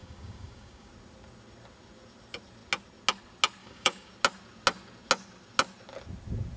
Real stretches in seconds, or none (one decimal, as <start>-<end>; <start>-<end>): 0.9-3.6; 4.1-6.6